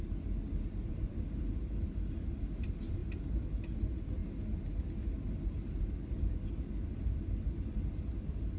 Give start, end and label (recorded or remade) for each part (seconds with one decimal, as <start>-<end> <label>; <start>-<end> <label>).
0.0-0.9 recorded; 0.9-1.6 remade; 1.6-3.0 recorded; 3.0-3.6 remade; 3.6-8.6 recorded